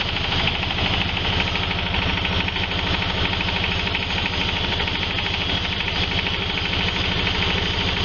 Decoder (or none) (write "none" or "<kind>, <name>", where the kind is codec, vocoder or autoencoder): none